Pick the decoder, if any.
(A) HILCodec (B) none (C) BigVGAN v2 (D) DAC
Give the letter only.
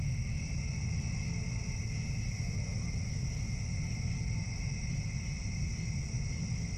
B